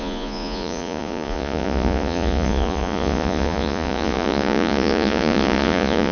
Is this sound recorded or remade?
remade